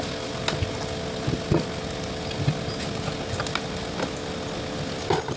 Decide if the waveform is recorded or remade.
recorded